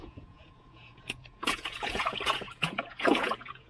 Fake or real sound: fake